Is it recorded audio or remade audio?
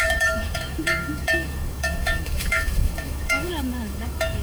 remade